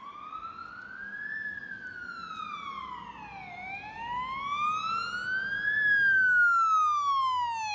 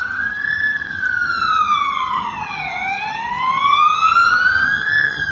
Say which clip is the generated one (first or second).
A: second